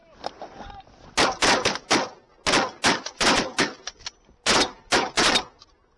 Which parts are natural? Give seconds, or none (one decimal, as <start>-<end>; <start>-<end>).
0.0-6.0